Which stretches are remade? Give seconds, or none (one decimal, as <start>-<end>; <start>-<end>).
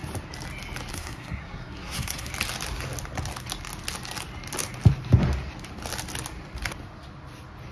0.9-2.3